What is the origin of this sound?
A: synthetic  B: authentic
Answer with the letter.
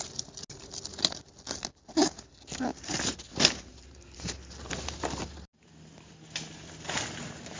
B